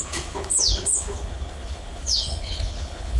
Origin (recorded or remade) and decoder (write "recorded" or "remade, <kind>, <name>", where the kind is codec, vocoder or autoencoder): remade, codec, HILCodec